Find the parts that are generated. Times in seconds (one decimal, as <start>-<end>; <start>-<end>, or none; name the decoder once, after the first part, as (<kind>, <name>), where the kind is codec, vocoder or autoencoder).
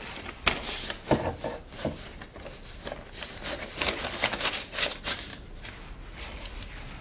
none